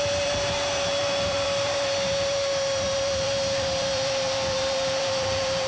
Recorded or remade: remade